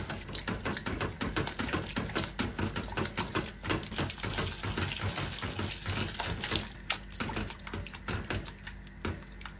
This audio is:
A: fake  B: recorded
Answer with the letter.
B